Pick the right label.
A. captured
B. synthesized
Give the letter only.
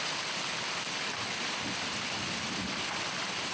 A